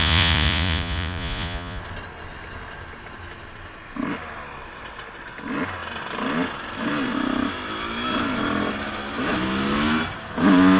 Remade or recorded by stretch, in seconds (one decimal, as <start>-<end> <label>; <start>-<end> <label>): 0.0-1.8 remade; 1.8-10.8 recorded